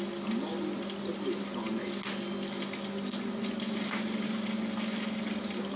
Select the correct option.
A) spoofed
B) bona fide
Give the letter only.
B